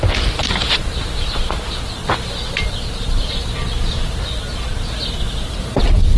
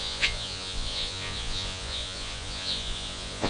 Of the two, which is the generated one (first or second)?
second